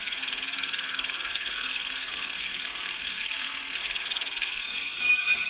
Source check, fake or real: fake